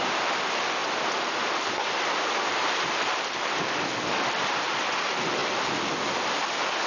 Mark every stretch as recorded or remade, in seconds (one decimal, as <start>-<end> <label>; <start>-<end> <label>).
0.0-6.9 recorded